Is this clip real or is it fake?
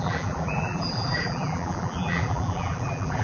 fake